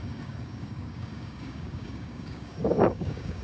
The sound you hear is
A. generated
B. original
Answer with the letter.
A